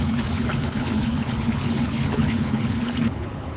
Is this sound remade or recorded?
remade